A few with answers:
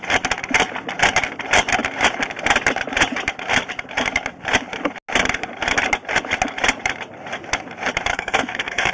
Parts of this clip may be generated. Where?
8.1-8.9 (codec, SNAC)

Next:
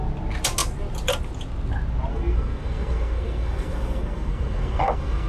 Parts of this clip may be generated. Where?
2.1-5.3 (codec, SNAC)

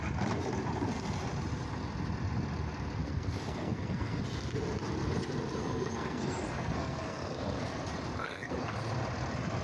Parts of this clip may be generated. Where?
3.0-4.2 (codec, SNAC); 5.6-7.9; 8.3-8.8

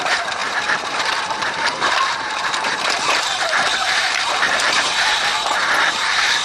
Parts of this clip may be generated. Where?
0.0-5.3 (vocoder, BigVGAN v2); 5.9-6.4

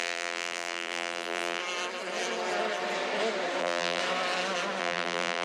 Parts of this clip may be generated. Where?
0.0-1.6 (vocoder, BigVGAN v2); 3.6-4.0; 4.8-5.4

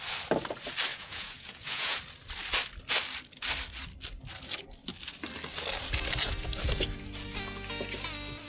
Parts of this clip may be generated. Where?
0.9-2.0 (vocoder, Vocos)

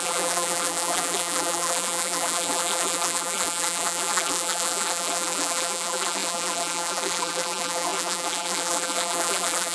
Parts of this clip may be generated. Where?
0.0-9.7 (vocoder, BigVGAN v2)